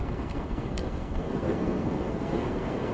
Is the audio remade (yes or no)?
yes